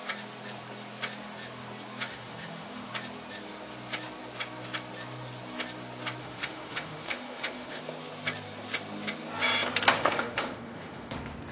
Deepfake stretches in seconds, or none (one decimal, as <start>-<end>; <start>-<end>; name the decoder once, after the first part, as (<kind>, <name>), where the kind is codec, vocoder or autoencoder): 2.1-2.9 (autoencoder, DAC-VAE); 6.2-7.8; 10.0-11.1